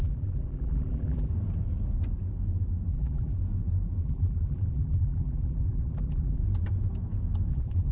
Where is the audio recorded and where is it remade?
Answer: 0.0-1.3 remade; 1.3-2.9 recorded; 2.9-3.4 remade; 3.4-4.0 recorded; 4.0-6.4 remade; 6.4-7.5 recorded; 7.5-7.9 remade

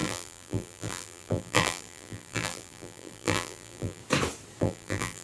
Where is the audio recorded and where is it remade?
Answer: 0.0-4.0 remade; 4.0-4.6 recorded; 4.6-5.2 remade

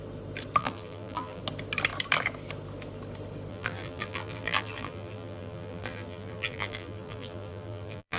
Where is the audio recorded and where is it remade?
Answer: 0.0-0.6 recorded; 0.6-1.4 remade; 1.4-3.5 recorded; 3.5-8.2 remade